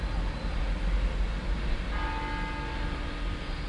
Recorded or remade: recorded